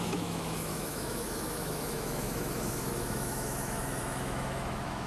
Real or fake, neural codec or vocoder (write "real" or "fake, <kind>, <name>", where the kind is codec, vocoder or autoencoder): fake, autoencoder, DAC-VAE